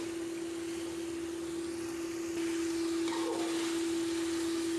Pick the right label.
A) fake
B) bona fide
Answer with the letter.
B